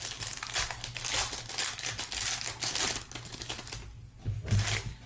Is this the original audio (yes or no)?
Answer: yes